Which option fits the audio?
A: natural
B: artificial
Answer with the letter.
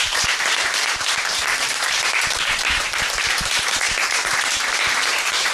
B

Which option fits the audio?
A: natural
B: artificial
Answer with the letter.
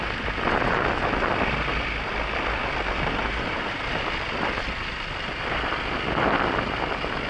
A